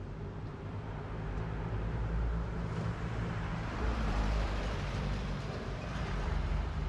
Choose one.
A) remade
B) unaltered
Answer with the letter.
A